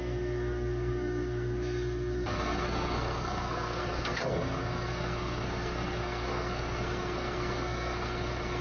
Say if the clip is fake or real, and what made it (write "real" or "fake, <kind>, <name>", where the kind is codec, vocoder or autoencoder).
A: fake, codec, SNAC